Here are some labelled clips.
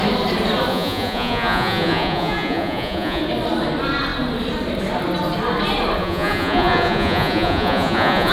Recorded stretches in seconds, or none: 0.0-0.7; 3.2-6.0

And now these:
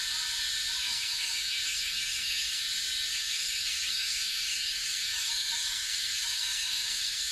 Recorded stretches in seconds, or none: 0.0-0.8; 2.6-3.1